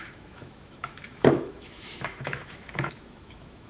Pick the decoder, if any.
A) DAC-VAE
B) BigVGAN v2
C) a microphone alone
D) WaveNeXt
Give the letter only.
A